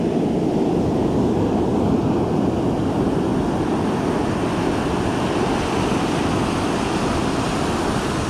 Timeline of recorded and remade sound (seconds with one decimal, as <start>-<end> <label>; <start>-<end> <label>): 0.0-8.3 recorded